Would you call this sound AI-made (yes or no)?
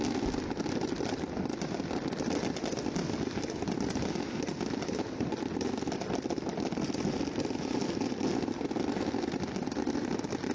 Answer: no